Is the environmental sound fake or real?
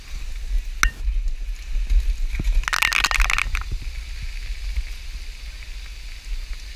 real